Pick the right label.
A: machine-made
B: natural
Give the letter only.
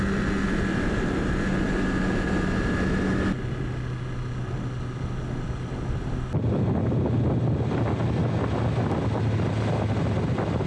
B